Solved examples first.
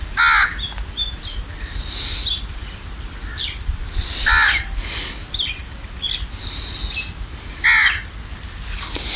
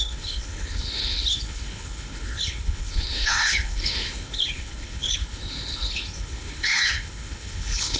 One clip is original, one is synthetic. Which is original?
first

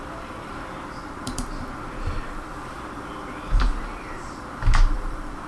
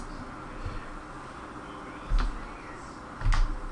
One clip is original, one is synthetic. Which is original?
second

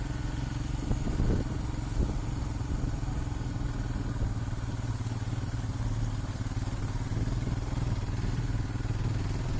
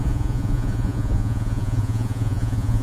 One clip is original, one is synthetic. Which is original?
first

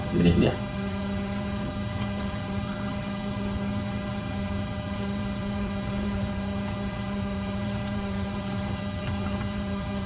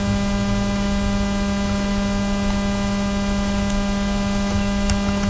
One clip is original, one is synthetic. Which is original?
second